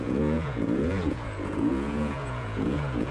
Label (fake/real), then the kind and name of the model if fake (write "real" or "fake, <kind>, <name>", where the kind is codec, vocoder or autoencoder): fake, vocoder, Vocos